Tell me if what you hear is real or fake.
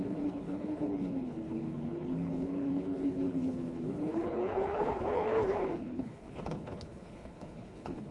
fake